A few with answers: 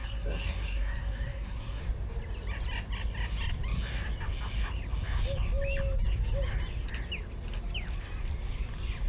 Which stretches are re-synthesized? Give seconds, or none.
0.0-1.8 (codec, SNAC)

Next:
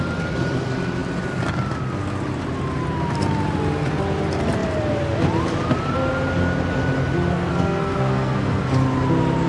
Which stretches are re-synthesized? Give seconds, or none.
7.3-8.6 (codec, SNAC)